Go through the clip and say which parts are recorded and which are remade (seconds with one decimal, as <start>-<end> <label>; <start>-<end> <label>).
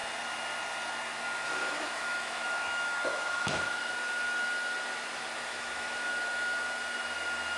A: 0.0-1.6 recorded; 1.6-3.9 remade; 3.9-5.5 recorded; 5.5-6.1 remade; 6.1-7.6 recorded